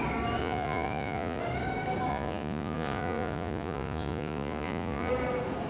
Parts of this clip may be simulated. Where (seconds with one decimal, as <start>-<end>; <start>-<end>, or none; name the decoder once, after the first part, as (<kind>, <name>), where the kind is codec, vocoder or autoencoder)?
0.4-1.4 (vocoder, Vocos); 2.1-5.1